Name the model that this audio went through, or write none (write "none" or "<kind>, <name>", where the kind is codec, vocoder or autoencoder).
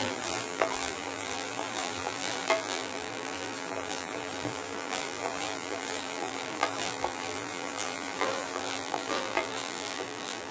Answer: vocoder, BigVGAN v2